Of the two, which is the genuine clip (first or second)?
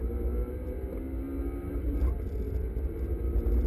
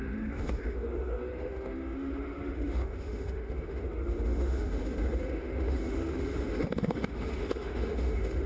first